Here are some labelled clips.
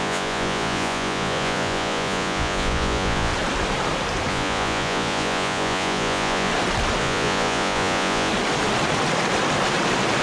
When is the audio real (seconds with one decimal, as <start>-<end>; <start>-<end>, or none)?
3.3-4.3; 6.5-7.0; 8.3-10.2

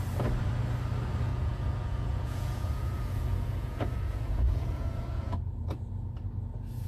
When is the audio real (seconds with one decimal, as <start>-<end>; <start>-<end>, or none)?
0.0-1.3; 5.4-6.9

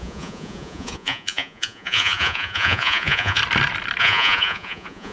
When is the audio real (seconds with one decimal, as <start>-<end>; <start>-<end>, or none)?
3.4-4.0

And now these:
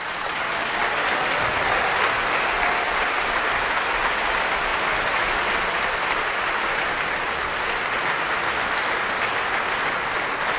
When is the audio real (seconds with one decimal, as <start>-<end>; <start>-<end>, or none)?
0.0-10.6